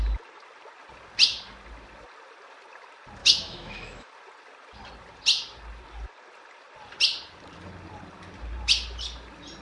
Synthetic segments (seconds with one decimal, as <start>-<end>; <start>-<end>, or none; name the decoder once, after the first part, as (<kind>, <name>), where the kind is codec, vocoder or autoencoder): 3.2-4.1 (autoencoder, DAC-VAE)